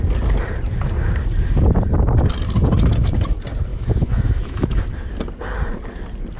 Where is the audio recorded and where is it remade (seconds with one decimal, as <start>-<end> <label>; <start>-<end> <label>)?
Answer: 0.0-3.7 recorded; 3.7-4.8 remade; 4.8-6.4 recorded